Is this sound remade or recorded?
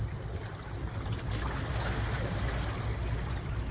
recorded